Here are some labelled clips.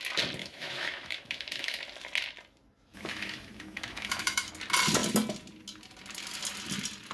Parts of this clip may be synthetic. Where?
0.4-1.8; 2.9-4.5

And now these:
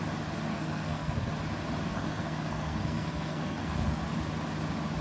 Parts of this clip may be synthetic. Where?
0.5-1.3; 1.9-4.0

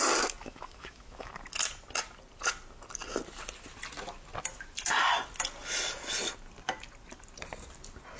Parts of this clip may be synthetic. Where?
0.4-1.3

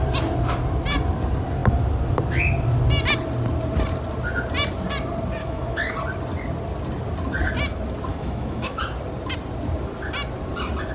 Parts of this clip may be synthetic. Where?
5.4-5.9; 8.1-8.8

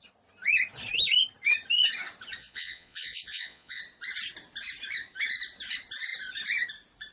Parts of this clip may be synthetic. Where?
2.4-3.8

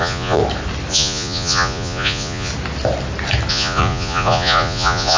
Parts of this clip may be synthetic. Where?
0.0-0.4; 0.9-2.5; 3.5-5.2

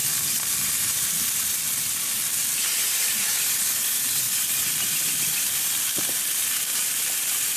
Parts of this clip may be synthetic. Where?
none

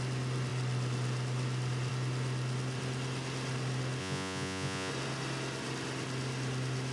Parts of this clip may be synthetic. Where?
4.0-4.9